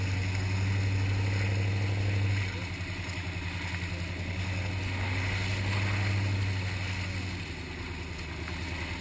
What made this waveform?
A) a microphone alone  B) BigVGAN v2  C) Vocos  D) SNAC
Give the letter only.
A